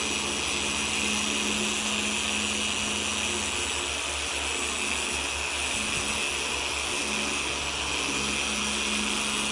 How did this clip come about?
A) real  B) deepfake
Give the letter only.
A